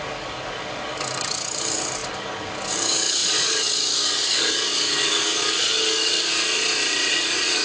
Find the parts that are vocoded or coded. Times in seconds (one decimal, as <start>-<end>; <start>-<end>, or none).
0.0-6.3; 7.1-7.6